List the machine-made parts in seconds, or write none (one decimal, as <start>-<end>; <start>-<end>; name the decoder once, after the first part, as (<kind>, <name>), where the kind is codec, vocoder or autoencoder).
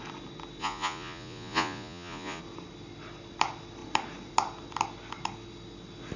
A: 0.6-2.4 (vocoder, Vocos)